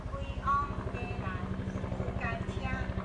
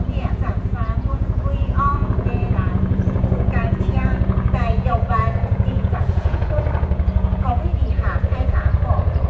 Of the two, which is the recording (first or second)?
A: first